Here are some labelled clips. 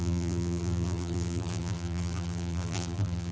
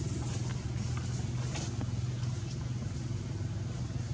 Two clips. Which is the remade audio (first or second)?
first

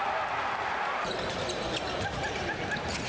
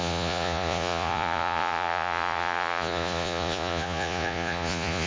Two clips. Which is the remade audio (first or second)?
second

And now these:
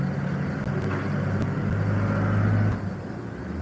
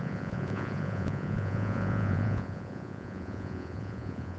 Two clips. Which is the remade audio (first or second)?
second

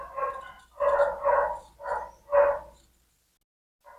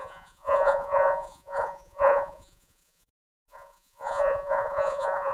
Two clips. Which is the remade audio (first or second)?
second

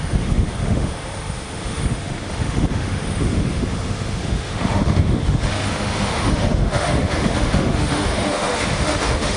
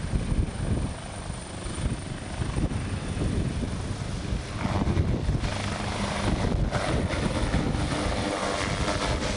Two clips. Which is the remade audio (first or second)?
first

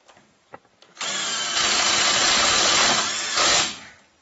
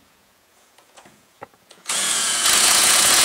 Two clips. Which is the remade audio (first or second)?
second